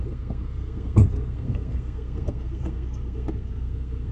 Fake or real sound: fake